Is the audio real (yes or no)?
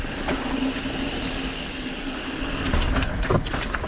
yes